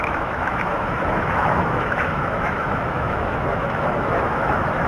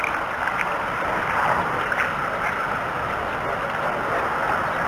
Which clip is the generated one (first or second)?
first